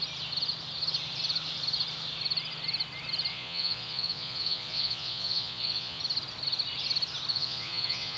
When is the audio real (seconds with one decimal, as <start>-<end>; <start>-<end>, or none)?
0.0-3.3; 6.0-7.3